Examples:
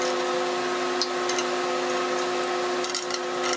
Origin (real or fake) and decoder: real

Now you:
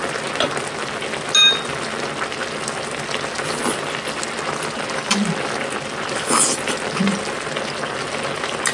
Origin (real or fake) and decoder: real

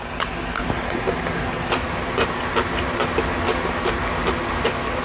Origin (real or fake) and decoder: real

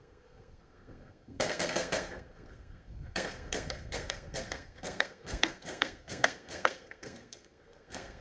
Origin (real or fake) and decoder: fake, codec, SNAC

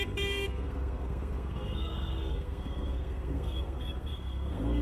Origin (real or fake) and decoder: fake, codec, SNAC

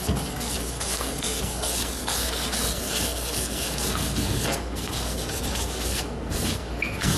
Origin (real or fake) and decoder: fake, codec, SNAC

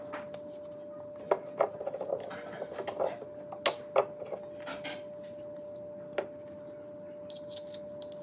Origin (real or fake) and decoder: real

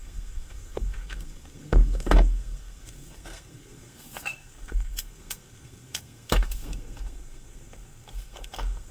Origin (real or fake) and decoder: fake, codec, SNAC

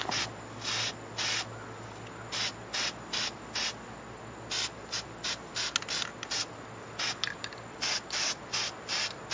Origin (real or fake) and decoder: real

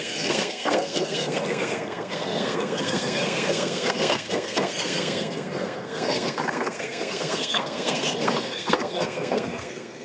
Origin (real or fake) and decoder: fake, codec, SNAC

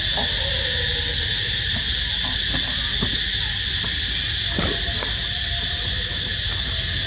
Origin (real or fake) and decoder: real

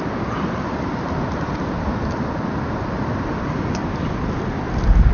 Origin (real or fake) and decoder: real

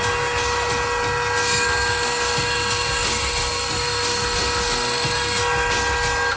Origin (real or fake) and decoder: real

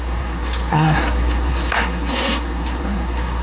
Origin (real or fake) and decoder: fake, codec, SNAC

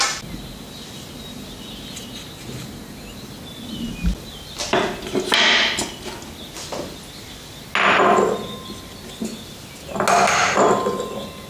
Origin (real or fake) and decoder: real